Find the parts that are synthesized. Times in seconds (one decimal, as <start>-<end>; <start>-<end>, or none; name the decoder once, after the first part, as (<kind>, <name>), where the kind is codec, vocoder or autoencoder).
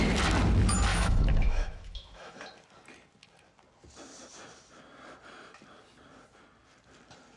0.9-2.4 (autoencoder, DAC-VAE)